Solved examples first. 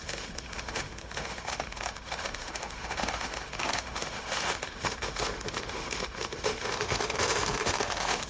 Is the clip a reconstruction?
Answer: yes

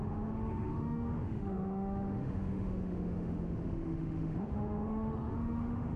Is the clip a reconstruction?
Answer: yes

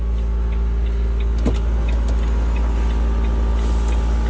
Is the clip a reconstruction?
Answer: no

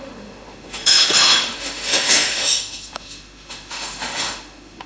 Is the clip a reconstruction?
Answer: yes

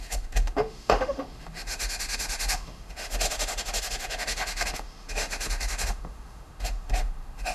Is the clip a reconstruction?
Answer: yes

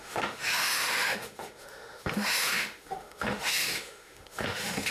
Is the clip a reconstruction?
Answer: yes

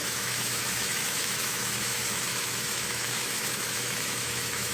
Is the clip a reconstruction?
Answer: yes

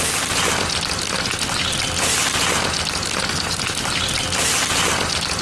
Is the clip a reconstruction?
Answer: no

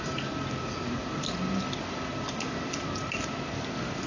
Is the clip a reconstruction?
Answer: no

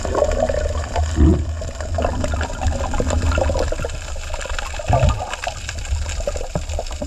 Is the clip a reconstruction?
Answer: no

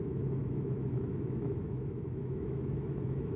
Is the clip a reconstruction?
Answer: yes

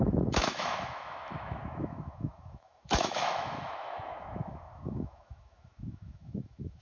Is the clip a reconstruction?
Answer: yes